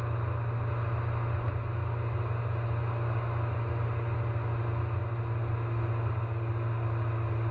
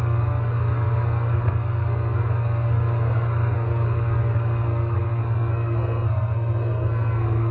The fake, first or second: second